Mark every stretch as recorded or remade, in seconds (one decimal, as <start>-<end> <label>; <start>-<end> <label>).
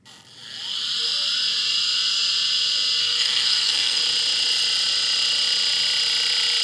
0.0-3.0 recorded; 3.0-4.0 remade; 4.0-6.6 recorded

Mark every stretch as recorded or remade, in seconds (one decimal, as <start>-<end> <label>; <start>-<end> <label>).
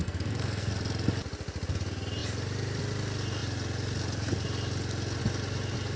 0.0-0.7 remade; 0.7-6.0 recorded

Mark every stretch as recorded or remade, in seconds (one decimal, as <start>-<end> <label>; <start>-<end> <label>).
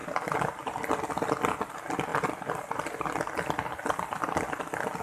0.0-5.0 recorded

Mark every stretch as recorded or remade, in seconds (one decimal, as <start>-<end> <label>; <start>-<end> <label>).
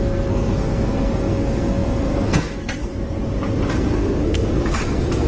0.0-2.9 remade; 2.9-3.7 recorded; 3.7-5.3 remade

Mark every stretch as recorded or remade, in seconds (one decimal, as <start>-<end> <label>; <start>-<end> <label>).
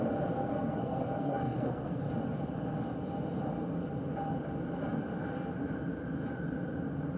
0.0-0.4 recorded; 0.4-2.1 remade; 2.1-7.2 recorded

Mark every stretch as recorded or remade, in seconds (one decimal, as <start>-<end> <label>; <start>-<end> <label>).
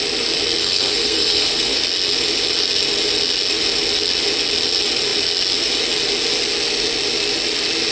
0.0-0.6 recorded; 0.6-1.8 remade; 1.8-7.9 recorded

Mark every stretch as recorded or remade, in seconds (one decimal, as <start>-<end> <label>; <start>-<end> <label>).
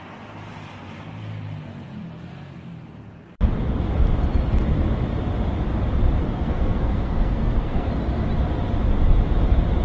0.0-6.2 recorded; 6.2-7.9 remade; 7.9-9.8 recorded